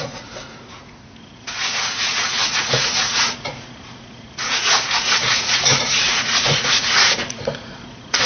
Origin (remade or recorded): remade